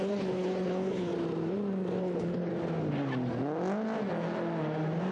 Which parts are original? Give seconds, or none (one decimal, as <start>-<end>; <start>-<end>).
1.1-2.0; 2.5-5.1